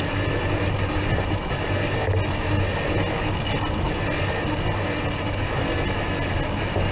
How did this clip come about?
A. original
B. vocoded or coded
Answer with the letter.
A